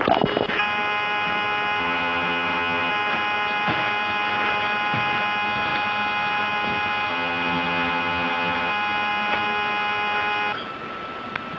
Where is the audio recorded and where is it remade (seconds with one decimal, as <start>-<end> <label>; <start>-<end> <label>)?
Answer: 0.0-1.8 recorded; 1.8-2.9 remade; 2.9-7.1 recorded; 7.1-8.7 remade; 8.7-11.6 recorded